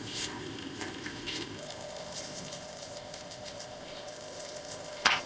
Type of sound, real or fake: fake